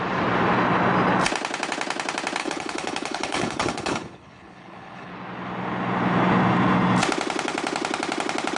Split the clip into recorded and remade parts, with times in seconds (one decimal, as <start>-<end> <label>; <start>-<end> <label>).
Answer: 0.0-2.4 recorded; 2.4-5.1 remade; 5.1-8.6 recorded